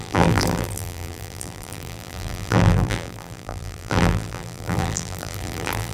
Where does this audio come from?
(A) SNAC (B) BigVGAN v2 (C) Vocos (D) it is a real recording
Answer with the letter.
B